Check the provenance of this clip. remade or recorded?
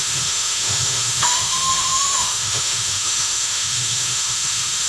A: remade